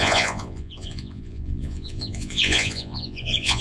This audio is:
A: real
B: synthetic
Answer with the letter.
B